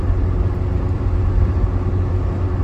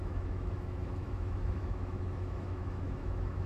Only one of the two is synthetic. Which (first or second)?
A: second